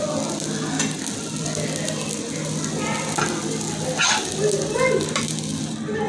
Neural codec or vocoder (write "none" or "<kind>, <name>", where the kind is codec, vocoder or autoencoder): none